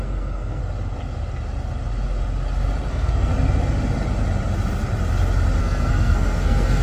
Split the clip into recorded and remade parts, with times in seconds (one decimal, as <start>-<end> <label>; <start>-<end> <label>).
0.0-0.6 remade; 0.6-2.9 recorded; 2.9-3.3 remade; 3.3-5.6 recorded; 5.6-6.8 remade